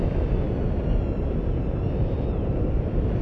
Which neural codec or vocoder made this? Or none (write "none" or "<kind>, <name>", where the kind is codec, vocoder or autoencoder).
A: none